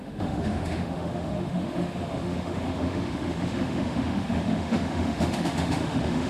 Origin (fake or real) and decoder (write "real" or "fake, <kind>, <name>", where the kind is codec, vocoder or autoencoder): fake, autoencoder, DAC-VAE